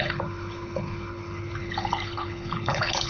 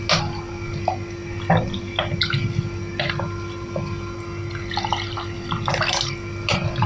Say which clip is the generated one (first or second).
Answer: first